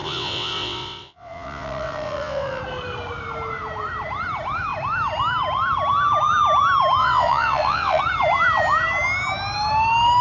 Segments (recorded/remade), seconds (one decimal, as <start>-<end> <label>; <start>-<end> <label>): 0.0-2.6 remade; 2.6-7.0 recorded; 7.0-8.0 remade; 8.0-10.2 recorded